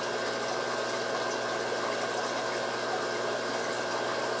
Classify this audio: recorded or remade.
recorded